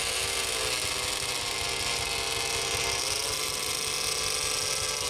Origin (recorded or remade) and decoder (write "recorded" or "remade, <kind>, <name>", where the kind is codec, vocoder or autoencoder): recorded